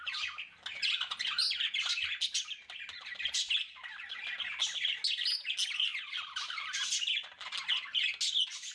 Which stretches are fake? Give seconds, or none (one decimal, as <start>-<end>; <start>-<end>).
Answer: none